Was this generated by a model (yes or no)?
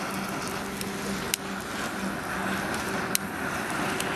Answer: no